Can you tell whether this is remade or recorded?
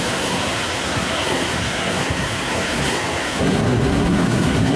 remade